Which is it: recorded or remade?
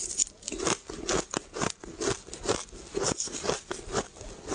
recorded